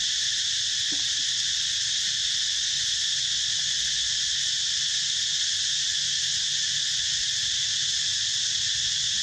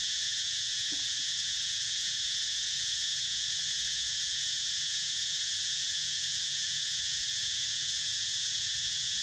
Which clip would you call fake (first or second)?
second